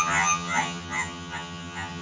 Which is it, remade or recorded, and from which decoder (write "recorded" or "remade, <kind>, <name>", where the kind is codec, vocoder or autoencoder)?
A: remade, vocoder, HiFi-GAN